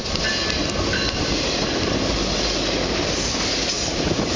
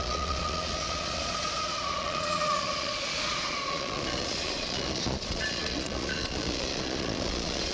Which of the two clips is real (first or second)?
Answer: first